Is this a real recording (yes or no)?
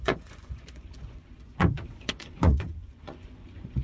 no